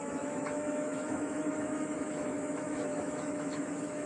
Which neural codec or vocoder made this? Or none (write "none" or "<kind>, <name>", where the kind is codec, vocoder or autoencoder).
autoencoder, DAC-VAE